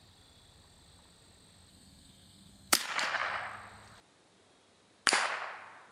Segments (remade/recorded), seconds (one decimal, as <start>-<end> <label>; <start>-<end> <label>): 0.0-1.7 recorded; 1.7-2.8 remade; 2.8-5.9 recorded